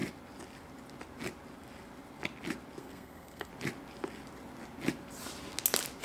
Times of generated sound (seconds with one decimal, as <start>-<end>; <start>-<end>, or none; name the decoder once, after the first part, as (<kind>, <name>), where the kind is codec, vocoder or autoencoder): 2.8-3.5 (codec, SNAC)